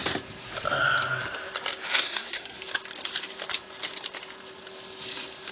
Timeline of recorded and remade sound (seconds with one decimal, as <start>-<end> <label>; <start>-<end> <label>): 0.0-1.9 recorded; 1.9-2.6 remade; 2.6-5.5 recorded